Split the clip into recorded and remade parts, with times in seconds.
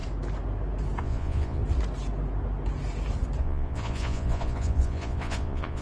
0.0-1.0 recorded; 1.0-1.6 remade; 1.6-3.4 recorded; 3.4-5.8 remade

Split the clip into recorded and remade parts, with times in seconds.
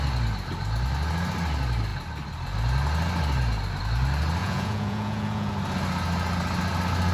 0.0-4.4 recorded; 4.4-5.5 remade; 5.5-7.1 recorded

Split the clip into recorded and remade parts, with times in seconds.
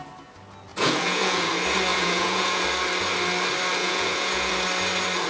0.0-0.7 recorded; 0.7-1.5 remade; 1.5-1.9 recorded; 1.9-2.6 remade; 2.6-3.8 recorded; 3.8-4.5 remade; 4.5-5.3 recorded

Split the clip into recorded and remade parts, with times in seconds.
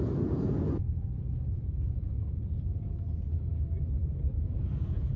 0.0-2.7 remade; 2.7-4.0 recorded; 4.0-5.2 remade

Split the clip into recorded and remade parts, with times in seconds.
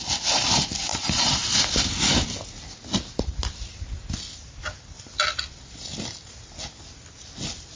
0.0-0.9 recorded; 0.9-1.5 remade; 1.5-7.8 recorded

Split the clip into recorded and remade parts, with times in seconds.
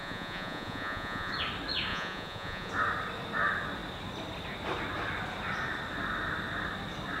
0.0-1.3 remade; 1.3-1.9 recorded; 1.9-2.7 remade; 2.7-7.2 recorded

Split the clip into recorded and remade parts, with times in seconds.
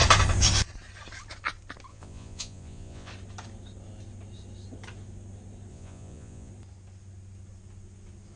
0.0-1.9 recorded; 1.9-3.1 remade; 3.1-5.7 recorded; 5.7-6.5 remade; 6.5-8.4 recorded